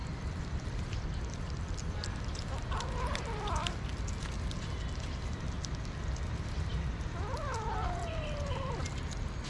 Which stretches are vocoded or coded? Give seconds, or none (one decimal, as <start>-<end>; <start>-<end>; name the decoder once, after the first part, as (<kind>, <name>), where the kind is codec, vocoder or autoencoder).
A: 0.0-3.9 (vocoder, BigVGAN v2); 6.7-8.8